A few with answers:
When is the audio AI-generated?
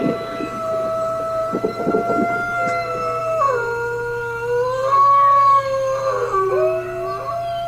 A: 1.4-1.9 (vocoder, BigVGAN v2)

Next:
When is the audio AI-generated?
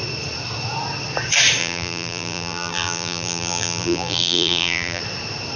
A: 1.6-5.0 (vocoder, BigVGAN v2)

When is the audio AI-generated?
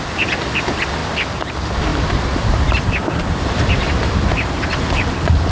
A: 1.9-5.5 (vocoder, BigVGAN v2)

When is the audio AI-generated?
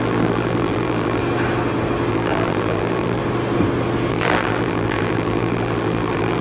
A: 0.0-1.2 (vocoder, BigVGAN v2); 2.1-3.2; 4.1-6.4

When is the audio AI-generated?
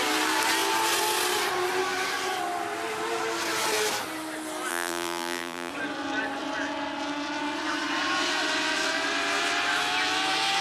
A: 4.7-5.7 (vocoder, BigVGAN v2)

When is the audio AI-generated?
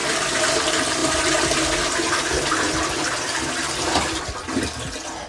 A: 0.0-0.5 (vocoder, BigVGAN v2)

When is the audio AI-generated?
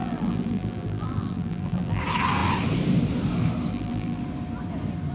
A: 0.0-2.0 (vocoder, BigVGAN v2); 3.7-4.2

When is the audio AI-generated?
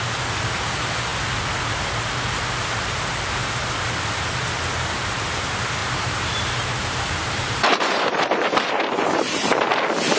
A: 5.8-9.7 (vocoder, BigVGAN v2)